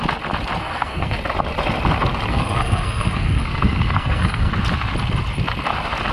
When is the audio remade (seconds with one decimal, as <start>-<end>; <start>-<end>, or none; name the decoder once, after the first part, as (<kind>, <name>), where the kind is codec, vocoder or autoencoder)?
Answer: 0.6-1.2 (codec, SNAC); 2.3-4.5